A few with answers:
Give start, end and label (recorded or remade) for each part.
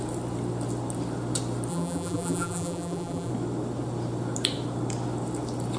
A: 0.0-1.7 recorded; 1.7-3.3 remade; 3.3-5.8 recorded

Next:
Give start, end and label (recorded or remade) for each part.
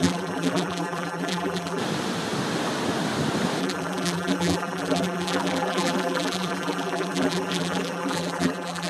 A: 0.0-1.8 remade; 1.8-3.6 recorded; 3.6-8.9 remade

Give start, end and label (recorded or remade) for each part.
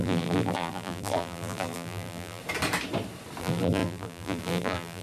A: 0.0-2.4 remade; 2.4-3.4 recorded; 3.4-5.0 remade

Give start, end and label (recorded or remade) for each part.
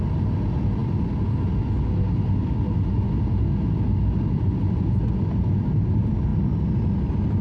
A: 0.0-6.3 recorded; 6.3-7.4 remade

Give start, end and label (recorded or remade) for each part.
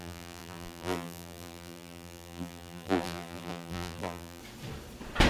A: 0.0-4.4 remade; 4.4-5.3 recorded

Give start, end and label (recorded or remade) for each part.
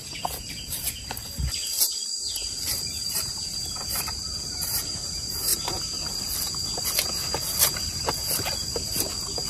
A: 0.0-1.2 remade; 1.2-2.5 recorded; 2.5-5.5 remade; 5.5-9.5 recorded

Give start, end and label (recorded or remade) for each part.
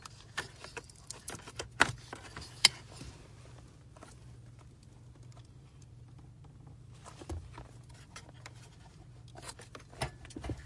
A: 0.0-5.4 recorded; 5.4-6.0 remade; 6.0-10.7 recorded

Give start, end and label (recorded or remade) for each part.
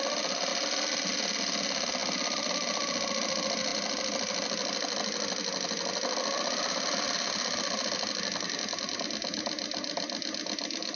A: 0.0-2.0 recorded; 2.0-2.5 remade; 2.5-3.7 recorded; 3.7-7.3 remade; 7.3-11.0 recorded